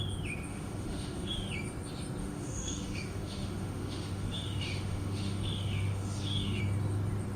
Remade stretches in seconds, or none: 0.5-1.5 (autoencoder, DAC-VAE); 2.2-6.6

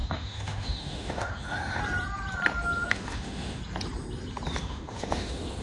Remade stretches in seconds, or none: 0.0-1.8 (autoencoder, DAC-VAE); 2.9-3.6; 4.6-5.6

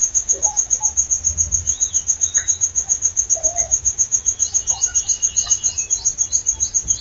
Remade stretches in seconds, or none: 0.0-0.8 (autoencoder, DAC-VAE); 1.6-5.8

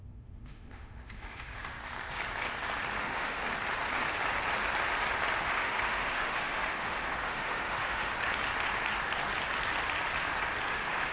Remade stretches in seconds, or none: 0.0-1.7 (autoencoder, DAC-VAE); 3.0-3.4; 5.4-8.1; 10.7-11.1